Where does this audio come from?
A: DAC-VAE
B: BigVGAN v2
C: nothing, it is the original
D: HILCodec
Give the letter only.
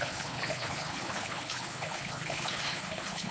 D